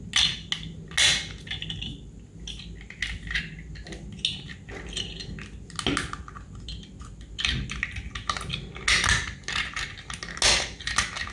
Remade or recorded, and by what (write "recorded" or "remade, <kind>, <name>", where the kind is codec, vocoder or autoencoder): recorded